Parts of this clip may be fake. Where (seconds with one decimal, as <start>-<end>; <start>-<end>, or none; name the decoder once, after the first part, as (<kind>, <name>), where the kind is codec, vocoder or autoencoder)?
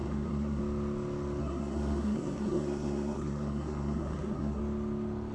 0.0-0.6 (codec, SNAC); 1.4-4.6